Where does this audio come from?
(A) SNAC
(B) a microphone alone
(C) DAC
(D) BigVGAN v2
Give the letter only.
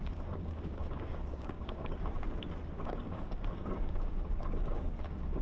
C